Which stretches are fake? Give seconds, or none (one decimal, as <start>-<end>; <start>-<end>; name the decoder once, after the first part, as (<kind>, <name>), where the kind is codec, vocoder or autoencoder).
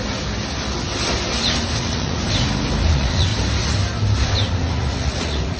1.8-2.2 (vocoder, Vocos); 2.9-3.3; 4.5-5.6